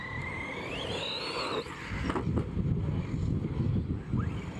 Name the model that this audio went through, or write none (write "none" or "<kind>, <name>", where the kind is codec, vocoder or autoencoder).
none